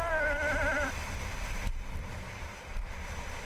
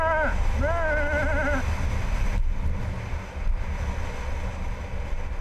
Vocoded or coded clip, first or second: first